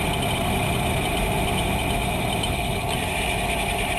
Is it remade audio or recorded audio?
recorded